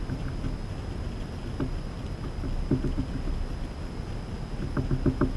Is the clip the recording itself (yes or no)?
yes